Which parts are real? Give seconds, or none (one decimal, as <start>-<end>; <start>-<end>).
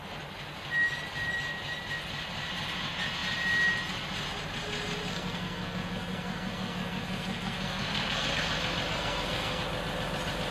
0.0-5.1; 8.3-8.9; 9.6-10.5